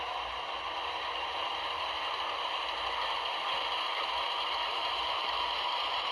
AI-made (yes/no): no